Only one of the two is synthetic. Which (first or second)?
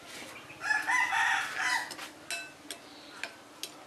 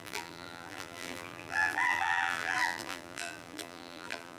second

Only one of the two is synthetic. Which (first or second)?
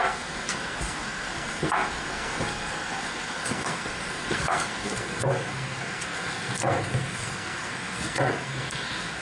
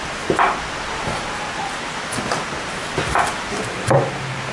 first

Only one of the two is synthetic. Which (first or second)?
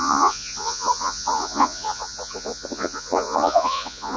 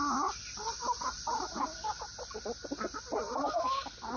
first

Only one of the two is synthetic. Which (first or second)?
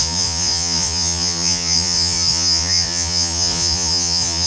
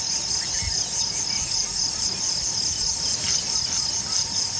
first